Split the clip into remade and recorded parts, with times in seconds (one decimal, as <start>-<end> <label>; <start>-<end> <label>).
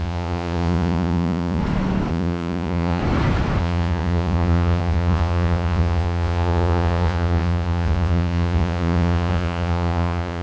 0.0-1.6 remade; 1.6-2.1 recorded; 2.1-3.0 remade; 3.0-3.6 recorded; 3.6-10.4 remade